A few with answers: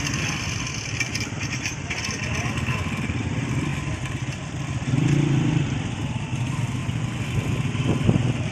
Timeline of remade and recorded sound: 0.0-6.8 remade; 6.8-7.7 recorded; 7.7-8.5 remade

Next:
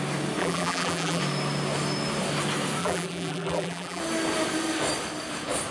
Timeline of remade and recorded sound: 0.0-0.4 recorded; 0.4-1.2 remade; 1.2-2.8 recorded; 2.8-4.0 remade; 4.0-5.7 recorded

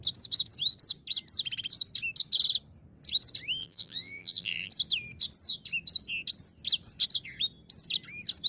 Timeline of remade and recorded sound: 0.0-3.6 recorded; 3.6-4.7 remade; 4.7-8.5 recorded

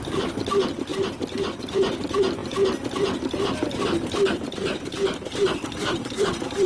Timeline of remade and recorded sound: 0.0-6.7 remade

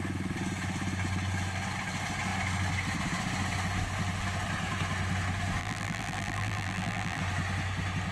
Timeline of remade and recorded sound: 0.0-5.6 recorded; 5.6-7.2 remade; 7.2-8.1 recorded